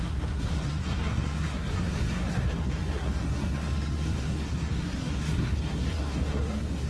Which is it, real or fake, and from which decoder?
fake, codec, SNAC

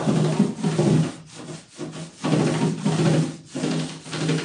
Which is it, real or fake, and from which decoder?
real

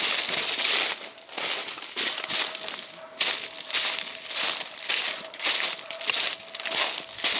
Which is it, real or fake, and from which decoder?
real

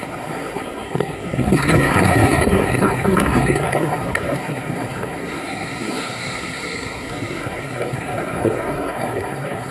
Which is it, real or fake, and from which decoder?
fake, codec, SNAC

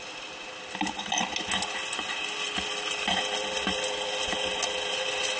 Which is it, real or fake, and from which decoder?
real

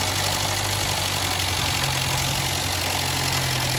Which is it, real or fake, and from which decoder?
real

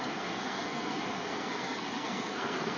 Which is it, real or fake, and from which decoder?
fake, codec, SNAC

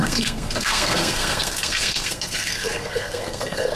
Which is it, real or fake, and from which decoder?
fake, codec, SNAC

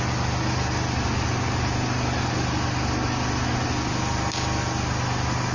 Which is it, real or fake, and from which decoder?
real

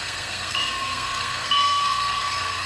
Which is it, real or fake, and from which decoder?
fake, codec, SNAC